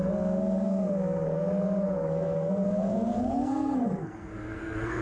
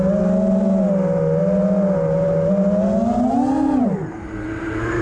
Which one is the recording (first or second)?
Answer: second